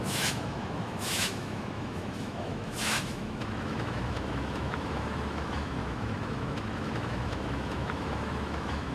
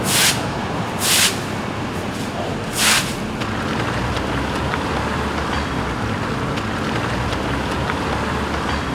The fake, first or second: first